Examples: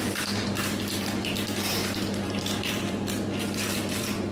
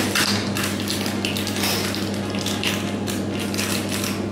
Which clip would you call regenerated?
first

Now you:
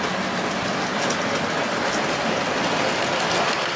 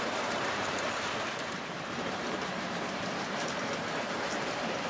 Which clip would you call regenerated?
second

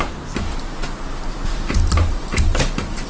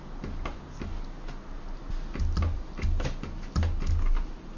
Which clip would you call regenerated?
first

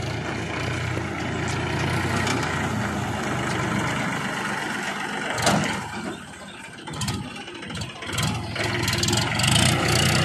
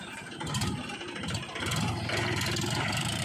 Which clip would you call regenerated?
second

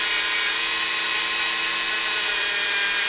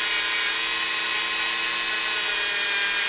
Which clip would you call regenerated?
first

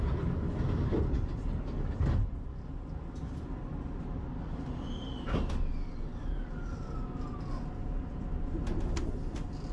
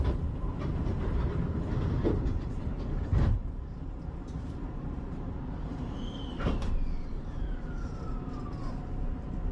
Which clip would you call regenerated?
second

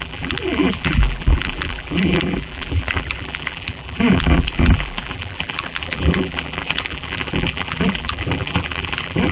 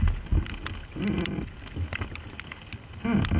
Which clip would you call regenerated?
first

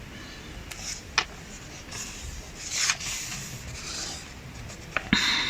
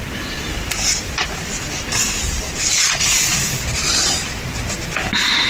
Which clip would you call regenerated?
second